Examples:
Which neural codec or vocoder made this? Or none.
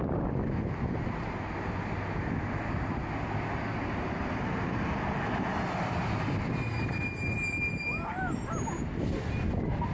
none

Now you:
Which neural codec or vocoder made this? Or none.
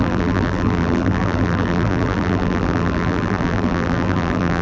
vocoder, BigVGAN v2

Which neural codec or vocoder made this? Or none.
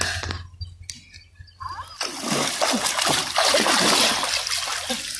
none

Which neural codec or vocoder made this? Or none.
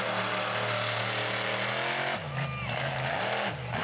none